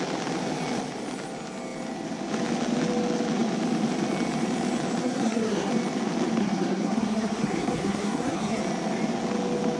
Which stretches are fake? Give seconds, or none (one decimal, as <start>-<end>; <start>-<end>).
5.0-5.7; 6.4-8.6